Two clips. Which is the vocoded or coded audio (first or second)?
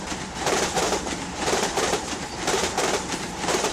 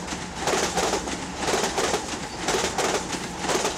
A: first